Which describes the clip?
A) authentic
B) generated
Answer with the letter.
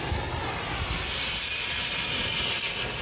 A